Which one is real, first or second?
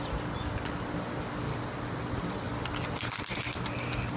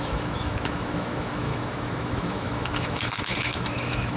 first